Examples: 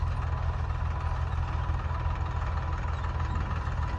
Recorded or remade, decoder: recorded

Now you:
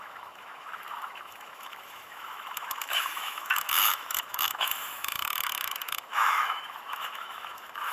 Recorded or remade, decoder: remade, autoencoder, DAC-VAE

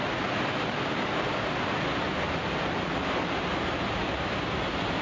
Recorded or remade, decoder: recorded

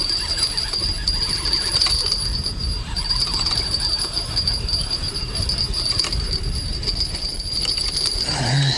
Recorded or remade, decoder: recorded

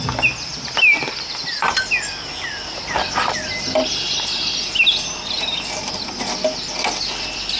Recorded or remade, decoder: recorded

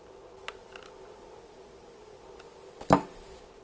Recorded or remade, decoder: recorded